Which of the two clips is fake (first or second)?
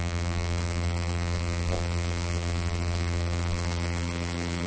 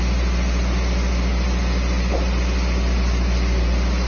first